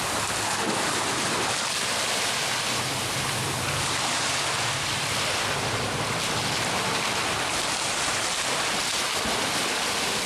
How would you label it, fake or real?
real